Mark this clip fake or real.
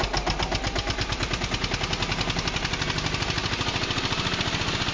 real